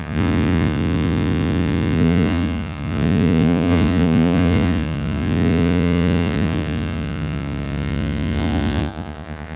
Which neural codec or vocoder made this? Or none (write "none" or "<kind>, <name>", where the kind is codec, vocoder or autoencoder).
vocoder, Vocos